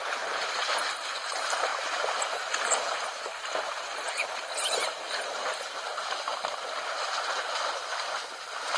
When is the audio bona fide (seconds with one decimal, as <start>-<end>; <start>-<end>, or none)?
0.0-0.8

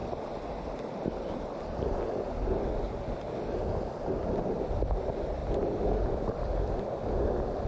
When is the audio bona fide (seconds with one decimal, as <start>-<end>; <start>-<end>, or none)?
0.0-5.4; 6.8-7.7

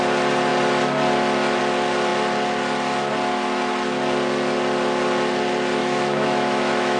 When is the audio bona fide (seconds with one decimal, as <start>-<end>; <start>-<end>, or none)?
0.0-5.8

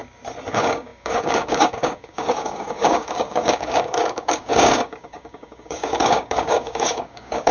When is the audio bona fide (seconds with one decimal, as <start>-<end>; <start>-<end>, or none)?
0.0-0.5